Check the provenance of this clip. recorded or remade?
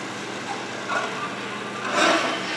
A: recorded